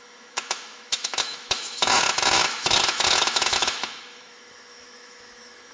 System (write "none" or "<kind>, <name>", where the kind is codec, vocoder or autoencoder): autoencoder, DAC-VAE